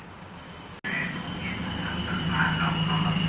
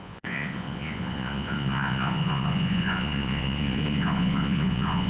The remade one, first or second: second